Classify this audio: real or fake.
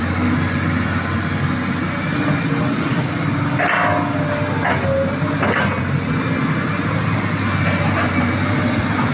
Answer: real